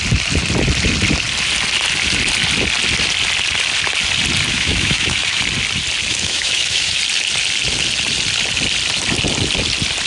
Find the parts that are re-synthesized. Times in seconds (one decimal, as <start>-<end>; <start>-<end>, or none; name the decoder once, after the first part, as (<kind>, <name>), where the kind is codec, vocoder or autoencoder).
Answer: 4.5-5.4 (autoencoder, DAC-VAE); 6.1-7.0